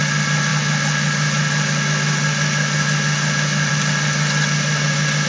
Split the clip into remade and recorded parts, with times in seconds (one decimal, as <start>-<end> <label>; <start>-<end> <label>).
0.0-5.3 recorded